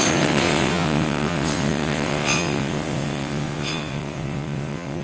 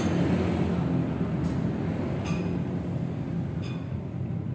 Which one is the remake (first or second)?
first